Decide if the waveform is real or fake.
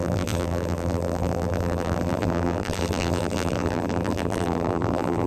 fake